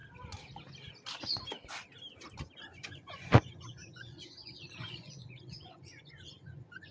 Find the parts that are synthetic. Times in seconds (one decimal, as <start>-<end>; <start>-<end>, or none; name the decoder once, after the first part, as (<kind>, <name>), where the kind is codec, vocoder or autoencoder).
2.7-6.9 (vocoder, Vocos)